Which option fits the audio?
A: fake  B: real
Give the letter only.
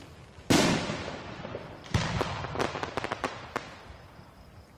B